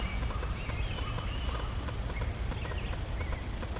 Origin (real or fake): real